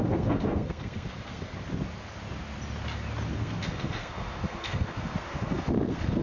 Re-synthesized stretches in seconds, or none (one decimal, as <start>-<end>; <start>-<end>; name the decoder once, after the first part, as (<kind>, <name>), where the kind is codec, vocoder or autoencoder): 0.0-1.5 (codec, SNAC); 3.3-6.2